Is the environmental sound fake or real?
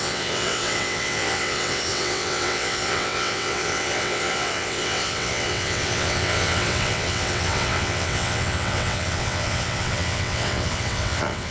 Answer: fake